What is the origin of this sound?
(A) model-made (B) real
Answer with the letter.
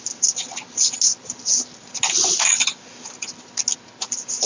B